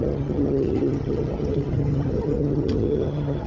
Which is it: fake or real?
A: fake